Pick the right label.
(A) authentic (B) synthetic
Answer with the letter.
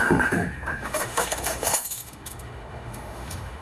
B